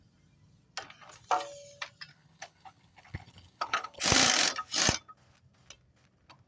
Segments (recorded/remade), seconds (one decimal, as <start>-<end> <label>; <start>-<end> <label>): 0.0-2.1 recorded; 2.1-4.0 remade; 4.0-6.5 recorded